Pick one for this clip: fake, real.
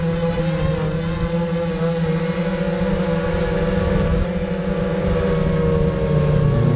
real